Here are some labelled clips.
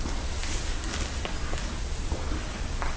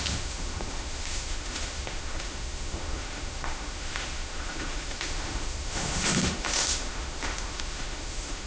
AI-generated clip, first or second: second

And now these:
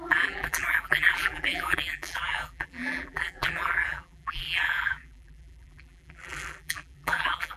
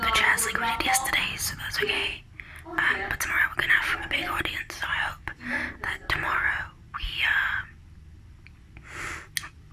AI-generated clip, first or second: first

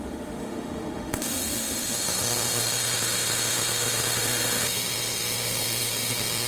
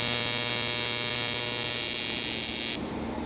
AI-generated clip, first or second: first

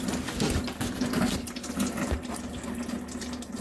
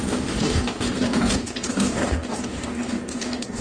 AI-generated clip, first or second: second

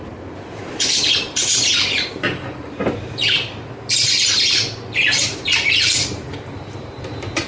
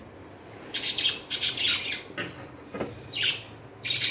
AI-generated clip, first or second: first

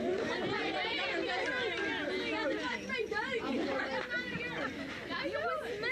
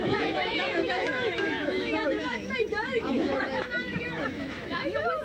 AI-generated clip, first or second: second